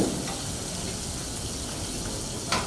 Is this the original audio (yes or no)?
yes